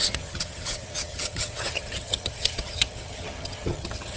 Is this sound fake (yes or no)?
yes